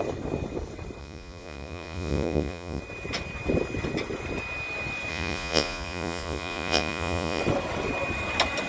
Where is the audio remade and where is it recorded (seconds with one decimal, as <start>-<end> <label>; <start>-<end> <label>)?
0.0-1.0 recorded; 1.0-2.8 remade; 2.8-5.1 recorded; 5.1-7.4 remade; 7.4-8.7 recorded